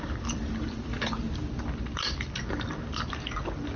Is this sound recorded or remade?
recorded